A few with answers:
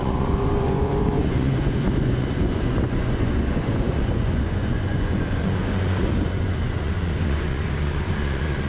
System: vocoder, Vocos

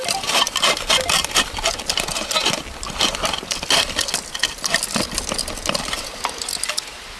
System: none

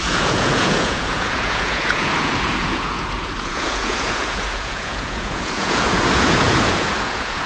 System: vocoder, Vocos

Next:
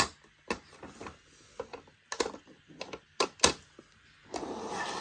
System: none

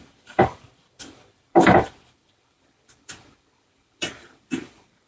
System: vocoder, BigVGAN v2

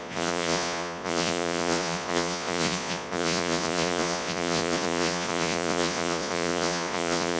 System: vocoder, Vocos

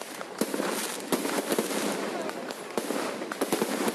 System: none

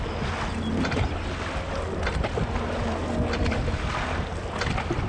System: none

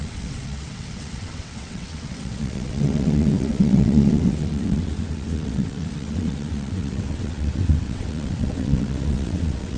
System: vocoder, WaveNeXt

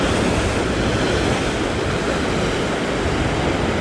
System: none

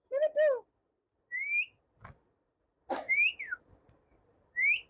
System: none